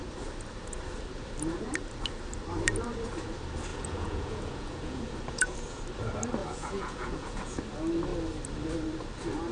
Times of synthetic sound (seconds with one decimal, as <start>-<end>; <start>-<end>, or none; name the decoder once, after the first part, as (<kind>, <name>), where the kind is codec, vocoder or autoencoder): 3.7-5.8 (vocoder, Vocos); 6.4-7.6

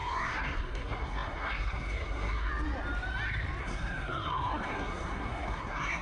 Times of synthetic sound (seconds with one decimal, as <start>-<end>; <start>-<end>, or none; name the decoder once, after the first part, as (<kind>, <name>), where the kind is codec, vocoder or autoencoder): 0.0-2.5 (codec, SNAC); 3.6-6.0

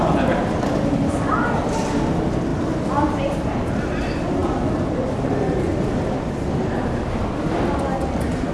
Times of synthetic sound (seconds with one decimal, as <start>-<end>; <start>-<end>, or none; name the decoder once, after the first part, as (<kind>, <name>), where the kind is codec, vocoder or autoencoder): none

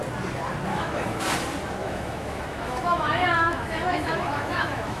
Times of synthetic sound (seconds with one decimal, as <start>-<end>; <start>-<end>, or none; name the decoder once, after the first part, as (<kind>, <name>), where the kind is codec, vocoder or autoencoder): 0.7-1.2 (autoencoder, DAC-VAE); 1.8-5.0

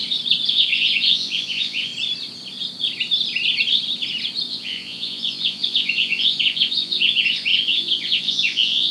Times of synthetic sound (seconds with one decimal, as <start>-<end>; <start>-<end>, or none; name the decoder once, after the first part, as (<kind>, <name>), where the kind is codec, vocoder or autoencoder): 0.5-1.9 (vocoder, Vocos); 4.5-8.9

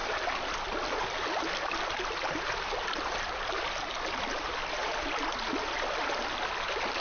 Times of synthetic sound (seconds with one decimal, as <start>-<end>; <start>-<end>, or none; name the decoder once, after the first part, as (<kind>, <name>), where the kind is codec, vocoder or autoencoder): none